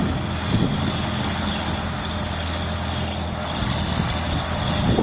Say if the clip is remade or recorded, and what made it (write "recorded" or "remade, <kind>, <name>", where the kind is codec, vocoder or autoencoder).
recorded